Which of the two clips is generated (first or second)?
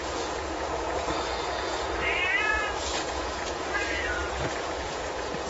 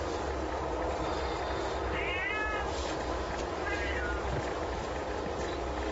first